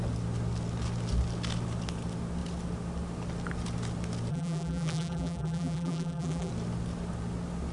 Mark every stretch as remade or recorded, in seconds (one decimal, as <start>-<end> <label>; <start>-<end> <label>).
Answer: 0.0-4.3 recorded; 4.3-6.5 remade; 6.5-7.7 recorded